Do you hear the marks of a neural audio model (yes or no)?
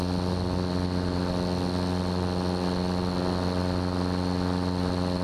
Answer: no